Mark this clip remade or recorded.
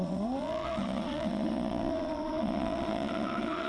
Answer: remade